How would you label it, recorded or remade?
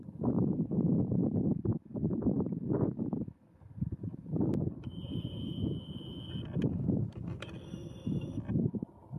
remade